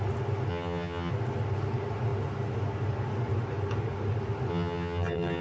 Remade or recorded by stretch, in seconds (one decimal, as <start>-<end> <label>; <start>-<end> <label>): 0.0-0.5 recorded; 0.5-1.1 remade; 1.1-4.5 recorded; 4.5-5.4 remade